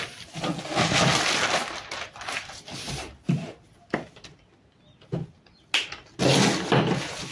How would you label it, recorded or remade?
recorded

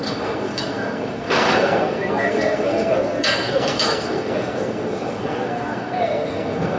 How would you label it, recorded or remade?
remade